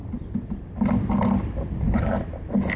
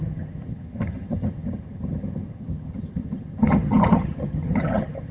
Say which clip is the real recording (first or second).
first